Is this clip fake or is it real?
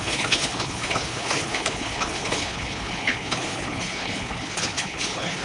fake